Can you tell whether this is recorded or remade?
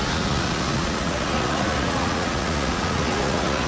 remade